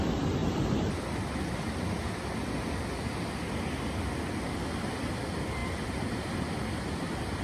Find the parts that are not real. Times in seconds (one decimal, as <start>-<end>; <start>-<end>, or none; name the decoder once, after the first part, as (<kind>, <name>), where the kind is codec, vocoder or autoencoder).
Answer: none